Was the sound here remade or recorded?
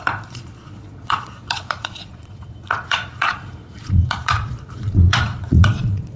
remade